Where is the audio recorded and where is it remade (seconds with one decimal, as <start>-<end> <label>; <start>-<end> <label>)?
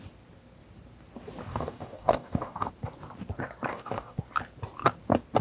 0.0-1.5 recorded; 1.5-2.7 remade; 2.7-3.7 recorded; 3.7-4.2 remade; 4.2-5.4 recorded